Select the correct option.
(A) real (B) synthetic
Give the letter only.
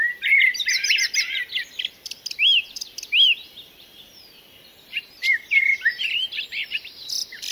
B